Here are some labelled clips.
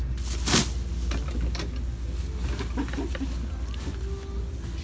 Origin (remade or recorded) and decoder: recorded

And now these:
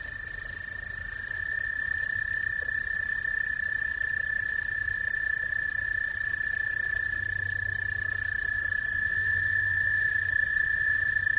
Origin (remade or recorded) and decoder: recorded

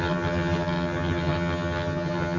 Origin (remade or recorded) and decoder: remade, vocoder, HiFi-GAN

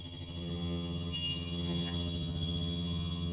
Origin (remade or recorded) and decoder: remade, vocoder, HiFi-GAN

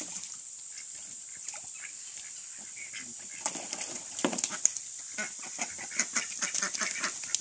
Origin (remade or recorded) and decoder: recorded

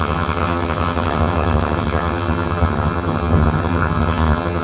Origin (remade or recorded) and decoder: remade, vocoder, HiFi-GAN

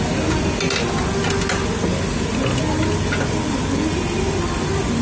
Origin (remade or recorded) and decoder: recorded